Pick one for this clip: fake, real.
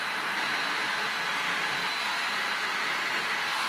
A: real